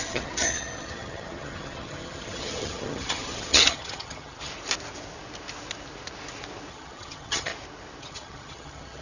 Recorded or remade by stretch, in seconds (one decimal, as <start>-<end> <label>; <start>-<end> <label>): 0.0-4.5 remade; 4.5-6.7 recorded; 6.7-7.5 remade; 7.5-8.0 recorded; 8.0-9.0 remade